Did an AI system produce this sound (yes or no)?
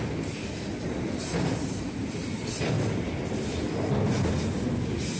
no